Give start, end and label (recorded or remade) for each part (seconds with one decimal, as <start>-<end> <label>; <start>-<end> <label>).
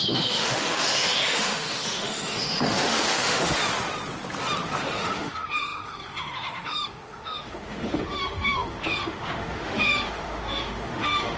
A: 0.0-3.6 remade; 3.6-4.8 recorded; 4.8-11.4 remade